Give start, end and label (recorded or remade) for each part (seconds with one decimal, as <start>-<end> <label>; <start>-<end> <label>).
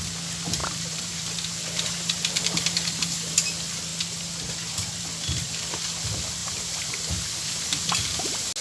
0.0-0.6 recorded; 0.6-3.3 remade; 3.3-6.4 recorded; 6.4-7.2 remade; 7.2-8.6 recorded